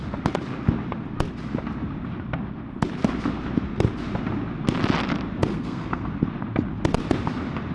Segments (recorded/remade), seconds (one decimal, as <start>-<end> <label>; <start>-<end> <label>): 0.0-5.5 recorded; 5.5-6.1 remade; 6.1-7.7 recorded